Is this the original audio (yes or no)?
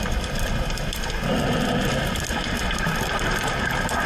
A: no